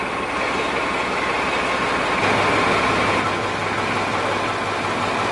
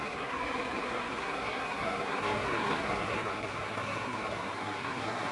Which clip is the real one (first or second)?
first